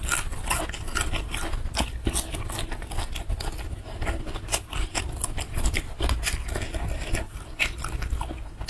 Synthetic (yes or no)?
no